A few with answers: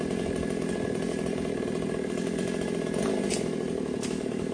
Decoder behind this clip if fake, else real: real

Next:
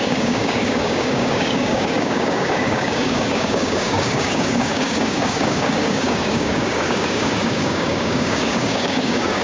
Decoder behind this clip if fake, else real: fake, codec, DAC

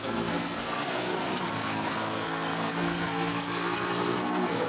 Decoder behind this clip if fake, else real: fake, codec, SNAC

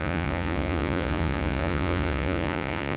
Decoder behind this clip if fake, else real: fake, vocoder, Vocos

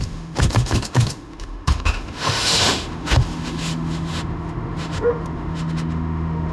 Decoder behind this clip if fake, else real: fake, autoencoder, DAC-VAE